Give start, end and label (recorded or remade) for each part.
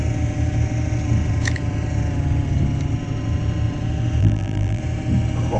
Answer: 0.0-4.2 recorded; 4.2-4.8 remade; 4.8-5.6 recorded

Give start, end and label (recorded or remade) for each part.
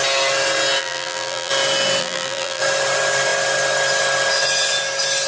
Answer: 0.0-0.8 recorded; 0.8-1.5 remade; 1.5-2.0 recorded; 2.0-2.6 remade; 2.6-5.3 recorded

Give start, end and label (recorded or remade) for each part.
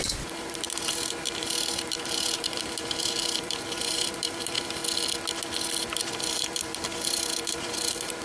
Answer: 0.0-4.8 remade; 4.8-5.8 recorded; 5.8-8.2 remade